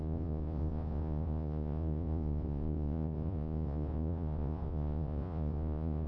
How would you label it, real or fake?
fake